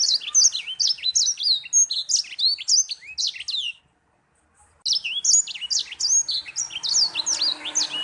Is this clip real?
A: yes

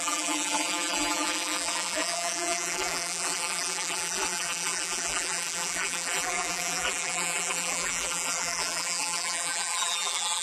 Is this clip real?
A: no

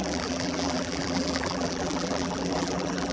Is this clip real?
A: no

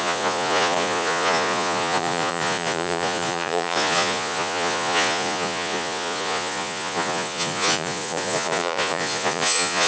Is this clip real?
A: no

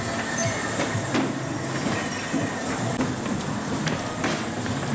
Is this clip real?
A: yes